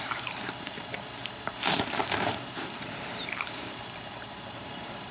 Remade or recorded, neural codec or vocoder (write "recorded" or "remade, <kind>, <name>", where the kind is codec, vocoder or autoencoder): remade, vocoder, BigVGAN v2